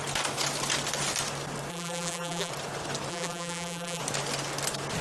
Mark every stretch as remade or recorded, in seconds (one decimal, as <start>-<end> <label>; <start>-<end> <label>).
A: 0.0-1.7 recorded; 1.7-2.5 remade; 2.5-3.1 recorded; 3.1-4.0 remade; 4.0-5.0 recorded